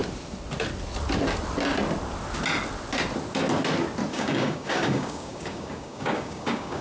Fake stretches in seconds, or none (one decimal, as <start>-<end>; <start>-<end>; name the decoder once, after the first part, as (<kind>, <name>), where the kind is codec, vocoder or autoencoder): 4.1-6.8 (codec, DAC)